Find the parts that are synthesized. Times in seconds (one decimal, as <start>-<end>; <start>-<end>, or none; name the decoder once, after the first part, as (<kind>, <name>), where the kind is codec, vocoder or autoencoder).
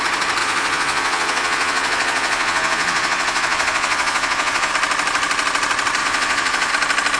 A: 0.4-4.7 (vocoder, Vocos); 6.0-6.7